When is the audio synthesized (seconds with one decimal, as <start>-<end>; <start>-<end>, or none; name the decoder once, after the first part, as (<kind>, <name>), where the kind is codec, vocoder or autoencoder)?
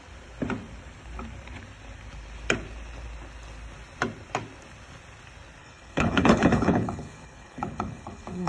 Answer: 5.6-8.5 (codec, HILCodec)